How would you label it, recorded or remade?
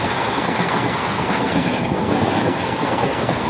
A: remade